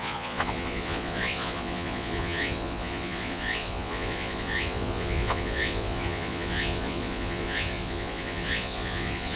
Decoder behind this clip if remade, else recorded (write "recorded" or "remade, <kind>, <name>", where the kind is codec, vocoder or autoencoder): remade, vocoder, Vocos